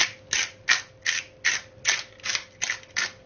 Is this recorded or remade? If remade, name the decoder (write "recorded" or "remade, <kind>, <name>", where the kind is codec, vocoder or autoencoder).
recorded